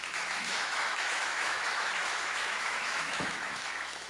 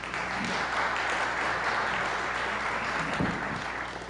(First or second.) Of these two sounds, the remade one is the first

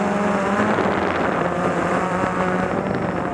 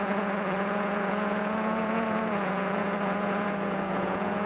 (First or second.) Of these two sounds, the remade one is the second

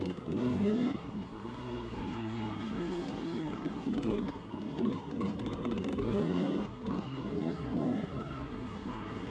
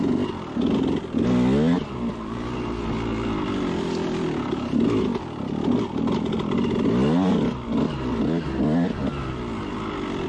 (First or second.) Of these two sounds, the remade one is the first